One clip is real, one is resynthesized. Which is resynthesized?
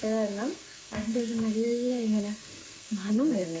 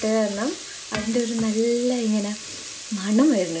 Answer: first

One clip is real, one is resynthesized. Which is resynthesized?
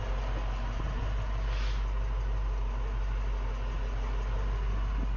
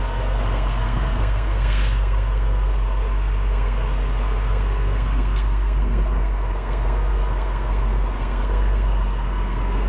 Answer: second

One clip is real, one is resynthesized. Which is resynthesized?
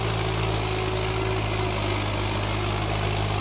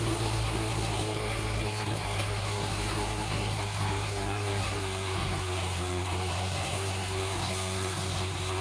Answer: second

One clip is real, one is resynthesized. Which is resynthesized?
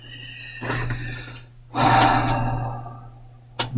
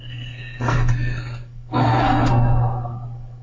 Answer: second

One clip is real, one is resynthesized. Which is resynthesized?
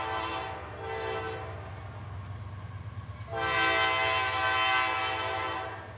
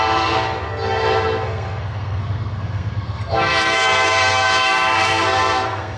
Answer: second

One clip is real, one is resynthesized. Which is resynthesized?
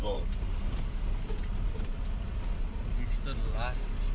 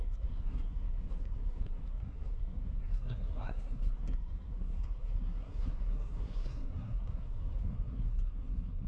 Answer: second